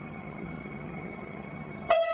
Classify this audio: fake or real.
fake